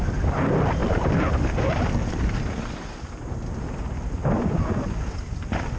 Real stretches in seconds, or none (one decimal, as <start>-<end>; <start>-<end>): 0.0-5.8